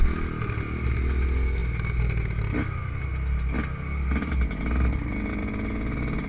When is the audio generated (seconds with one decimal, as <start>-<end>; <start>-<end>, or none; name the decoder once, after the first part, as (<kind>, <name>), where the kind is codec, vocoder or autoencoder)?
none